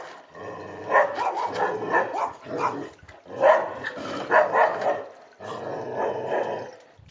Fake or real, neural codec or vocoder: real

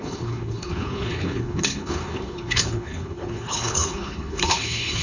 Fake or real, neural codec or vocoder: fake, codec, HILCodec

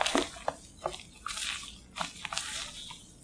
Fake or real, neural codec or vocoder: real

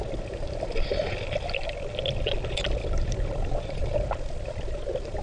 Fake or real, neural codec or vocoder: real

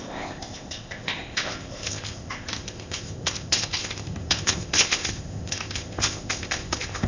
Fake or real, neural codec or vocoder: fake, codec, ZipCodec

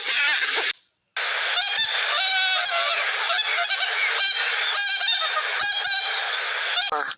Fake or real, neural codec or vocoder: real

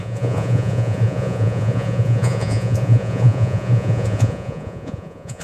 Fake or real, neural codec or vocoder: fake, vocoder, Vocos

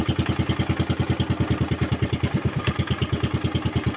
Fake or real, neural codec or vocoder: real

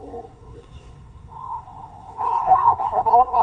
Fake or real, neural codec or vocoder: fake, codec, SNAC